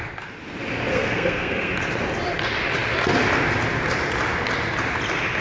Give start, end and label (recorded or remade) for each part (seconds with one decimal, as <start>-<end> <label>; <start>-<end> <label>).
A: 0.0-0.9 recorded; 0.9-1.7 remade; 1.7-5.4 recorded